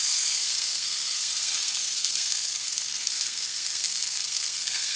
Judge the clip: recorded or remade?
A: remade